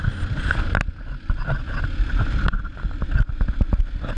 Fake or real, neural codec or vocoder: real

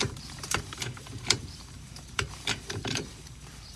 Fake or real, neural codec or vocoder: fake, vocoder, BigVGAN v2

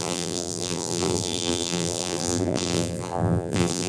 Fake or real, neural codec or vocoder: fake, vocoder, BigVGAN v2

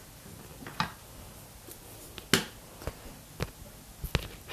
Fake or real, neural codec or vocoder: real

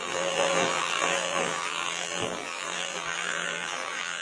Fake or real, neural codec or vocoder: fake, vocoder, BigVGAN v2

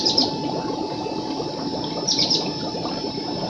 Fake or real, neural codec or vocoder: fake, vocoder, BigVGAN v2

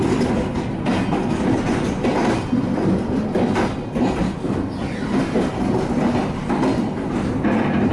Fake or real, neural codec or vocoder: real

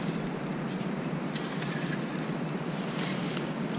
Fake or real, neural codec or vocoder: real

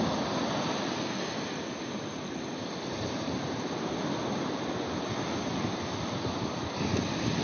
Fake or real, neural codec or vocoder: real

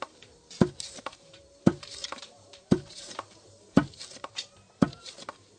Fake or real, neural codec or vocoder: fake, vocoder, BigVGAN v2